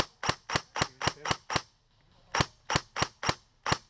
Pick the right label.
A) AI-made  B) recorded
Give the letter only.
B